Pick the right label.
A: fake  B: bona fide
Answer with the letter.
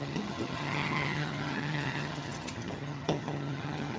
A